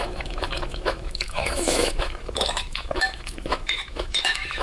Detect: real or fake fake